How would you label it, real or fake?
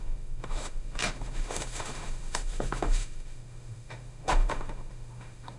fake